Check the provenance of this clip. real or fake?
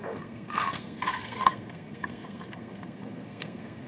fake